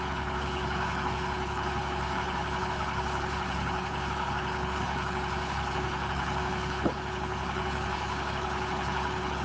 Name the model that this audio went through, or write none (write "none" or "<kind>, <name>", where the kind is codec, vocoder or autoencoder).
codec, HILCodec